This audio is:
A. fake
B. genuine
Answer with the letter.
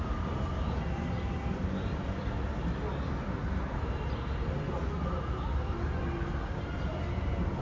B